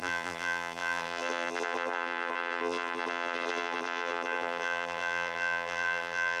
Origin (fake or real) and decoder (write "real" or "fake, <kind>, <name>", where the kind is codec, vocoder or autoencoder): fake, vocoder, BigVGAN v2